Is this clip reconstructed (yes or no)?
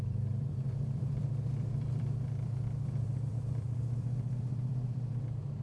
yes